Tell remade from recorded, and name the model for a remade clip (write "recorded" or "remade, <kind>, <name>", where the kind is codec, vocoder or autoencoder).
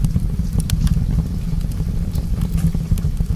remade, vocoder, BigVGAN v2